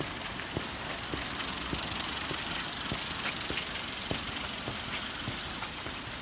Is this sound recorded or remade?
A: recorded